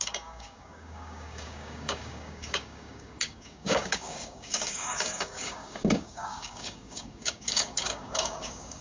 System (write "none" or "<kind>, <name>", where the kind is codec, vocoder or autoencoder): codec, DAC